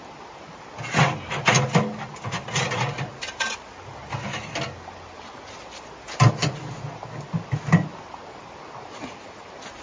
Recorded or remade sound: recorded